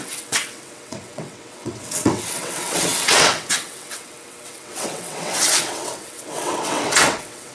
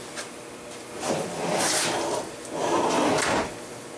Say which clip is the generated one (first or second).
first